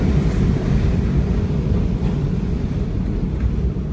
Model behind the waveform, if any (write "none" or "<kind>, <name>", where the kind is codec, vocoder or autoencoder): none